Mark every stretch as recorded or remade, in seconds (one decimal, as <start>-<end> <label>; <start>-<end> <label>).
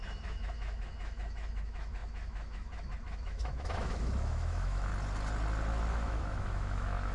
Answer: 0.0-4.9 remade; 4.9-5.9 recorded; 5.9-7.1 remade